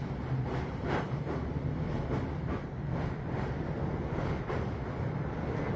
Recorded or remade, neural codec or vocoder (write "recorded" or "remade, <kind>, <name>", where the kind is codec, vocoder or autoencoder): recorded